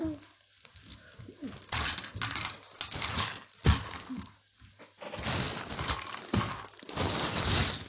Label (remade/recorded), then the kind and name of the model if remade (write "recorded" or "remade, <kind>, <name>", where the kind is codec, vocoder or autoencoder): recorded